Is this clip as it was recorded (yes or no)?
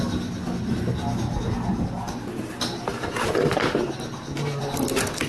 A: yes